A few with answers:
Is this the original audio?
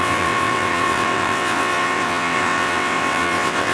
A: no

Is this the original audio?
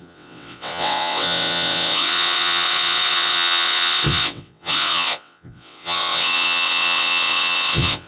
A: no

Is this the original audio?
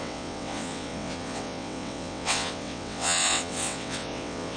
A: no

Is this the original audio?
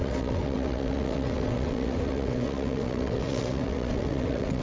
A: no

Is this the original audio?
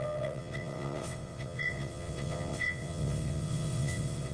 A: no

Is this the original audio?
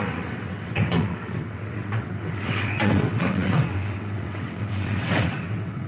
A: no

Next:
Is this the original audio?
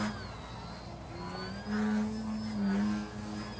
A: yes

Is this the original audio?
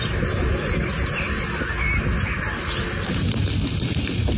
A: yes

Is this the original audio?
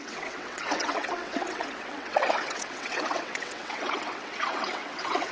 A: no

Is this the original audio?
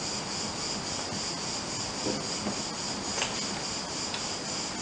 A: yes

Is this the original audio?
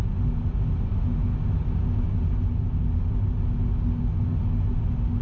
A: yes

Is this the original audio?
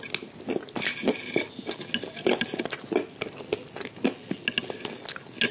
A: yes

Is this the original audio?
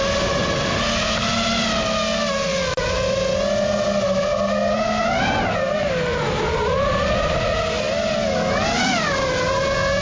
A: yes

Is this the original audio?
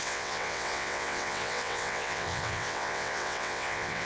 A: no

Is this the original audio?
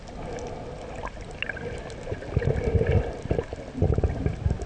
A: yes